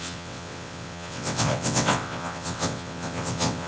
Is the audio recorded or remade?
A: remade